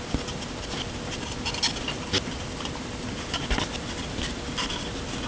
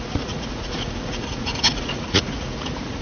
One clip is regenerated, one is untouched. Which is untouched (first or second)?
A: first